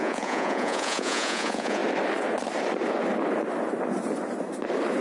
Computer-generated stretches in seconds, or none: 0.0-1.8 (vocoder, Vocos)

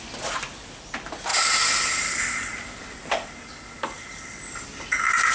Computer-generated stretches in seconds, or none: none

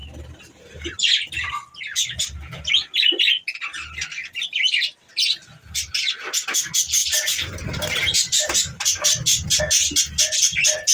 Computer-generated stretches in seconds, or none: 0.0-1.5 (vocoder, BigVGAN v2); 7.0-9.6

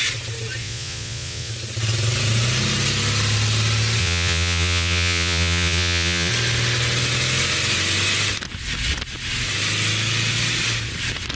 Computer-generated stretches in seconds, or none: 0.6-1.5 (vocoder, Vocos); 4.0-6.3

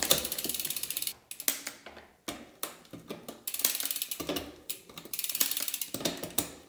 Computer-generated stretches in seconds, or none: 0.0-1.1 (vocoder, BigVGAN v2); 4.4-6.7

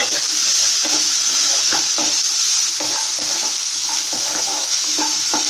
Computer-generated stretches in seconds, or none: 0.9-2.0 (autoencoder, DAC-VAE); 3.3-5.5